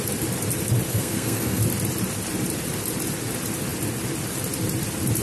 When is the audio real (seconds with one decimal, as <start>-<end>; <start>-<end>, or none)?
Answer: 0.0-0.9; 1.6-5.2